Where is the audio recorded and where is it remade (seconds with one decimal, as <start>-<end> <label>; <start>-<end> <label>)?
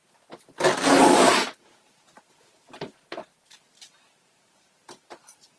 0.0-0.9 recorded; 0.9-5.6 remade